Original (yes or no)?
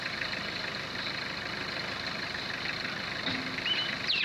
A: yes